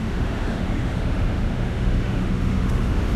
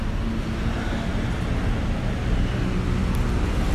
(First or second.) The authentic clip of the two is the second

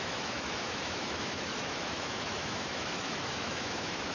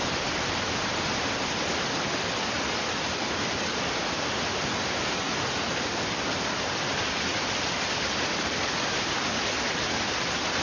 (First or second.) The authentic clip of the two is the second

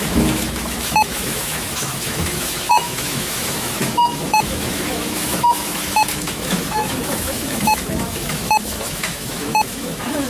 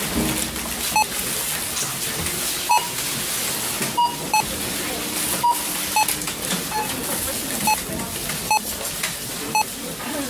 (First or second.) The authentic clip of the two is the second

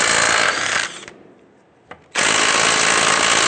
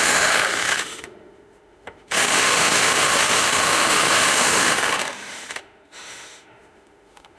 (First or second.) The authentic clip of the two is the first